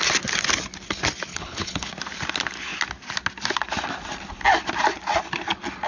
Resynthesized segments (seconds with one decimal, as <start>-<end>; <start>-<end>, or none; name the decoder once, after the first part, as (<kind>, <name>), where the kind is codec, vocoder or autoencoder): 1.3-1.9 (codec, HILCodec)